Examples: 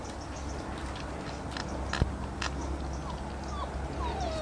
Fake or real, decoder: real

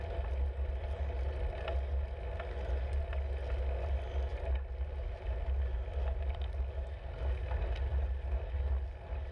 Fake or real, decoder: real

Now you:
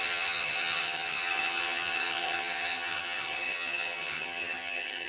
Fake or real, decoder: fake, vocoder, HiFi-GAN